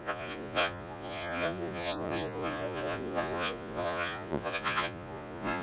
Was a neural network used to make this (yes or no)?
yes